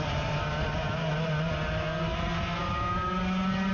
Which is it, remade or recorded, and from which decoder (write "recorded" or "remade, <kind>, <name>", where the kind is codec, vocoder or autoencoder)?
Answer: recorded